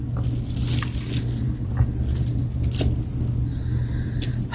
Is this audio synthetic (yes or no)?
no